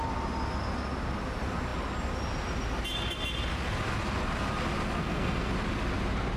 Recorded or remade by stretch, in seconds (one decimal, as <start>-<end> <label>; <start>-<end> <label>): 0.0-5.0 recorded; 5.0-5.5 remade; 5.5-6.4 recorded